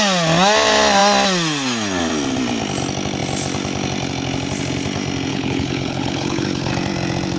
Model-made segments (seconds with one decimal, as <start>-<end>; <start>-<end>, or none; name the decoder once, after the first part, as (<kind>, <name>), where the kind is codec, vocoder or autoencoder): 5.3-6.7 (codec, HILCodec)